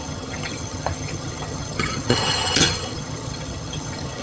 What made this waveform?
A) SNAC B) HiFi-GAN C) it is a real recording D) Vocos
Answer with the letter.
B